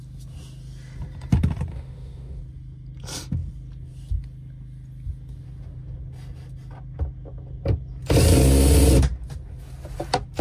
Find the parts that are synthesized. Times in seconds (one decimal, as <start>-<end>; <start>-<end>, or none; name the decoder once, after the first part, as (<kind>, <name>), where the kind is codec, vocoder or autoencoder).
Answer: 1.7-2.4 (autoencoder, DAC-VAE)